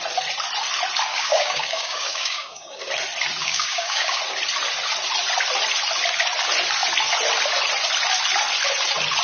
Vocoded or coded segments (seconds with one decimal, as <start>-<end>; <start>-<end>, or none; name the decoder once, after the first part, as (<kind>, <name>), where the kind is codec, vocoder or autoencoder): 1.1-2.8 (codec, DAC); 3.4-4.2